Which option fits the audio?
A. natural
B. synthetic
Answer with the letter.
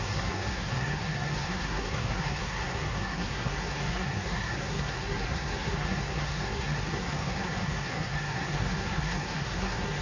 B